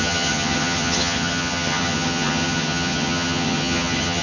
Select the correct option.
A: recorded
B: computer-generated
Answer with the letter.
B